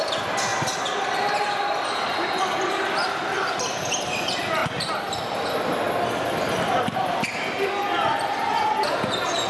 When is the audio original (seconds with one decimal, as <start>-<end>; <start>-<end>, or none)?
0.0-9.5

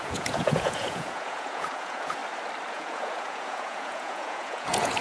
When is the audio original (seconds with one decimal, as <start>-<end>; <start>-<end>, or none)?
2.2-2.7

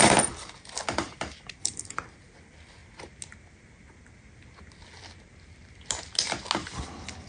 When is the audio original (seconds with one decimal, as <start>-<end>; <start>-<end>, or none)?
2.8-7.3

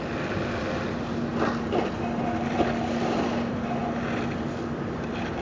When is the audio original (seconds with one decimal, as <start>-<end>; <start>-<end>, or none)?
1.3-1.9; 3.8-4.5